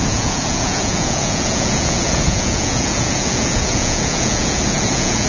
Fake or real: fake